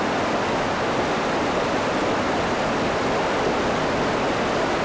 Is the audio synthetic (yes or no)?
no